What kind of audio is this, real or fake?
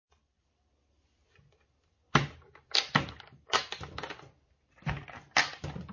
fake